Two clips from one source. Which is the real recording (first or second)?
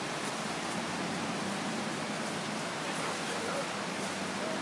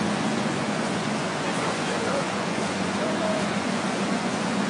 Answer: first